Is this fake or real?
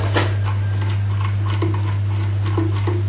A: real